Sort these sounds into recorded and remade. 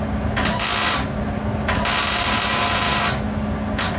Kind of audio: recorded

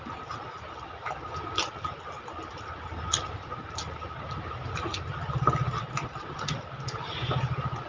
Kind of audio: recorded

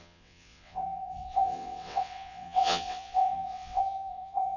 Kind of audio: remade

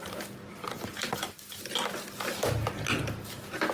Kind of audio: recorded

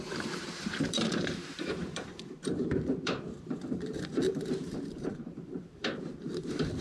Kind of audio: remade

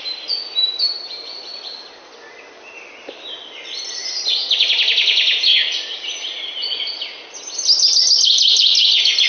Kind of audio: recorded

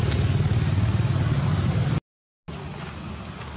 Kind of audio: recorded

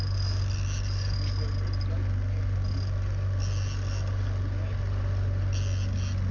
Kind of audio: recorded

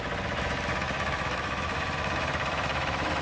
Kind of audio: remade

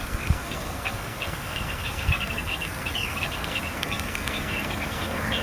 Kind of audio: remade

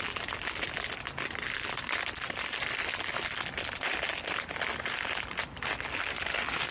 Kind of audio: recorded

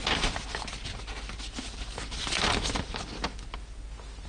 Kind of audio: recorded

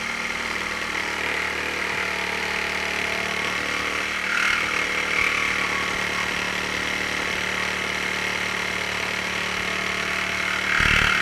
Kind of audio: recorded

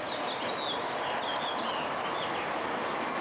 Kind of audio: recorded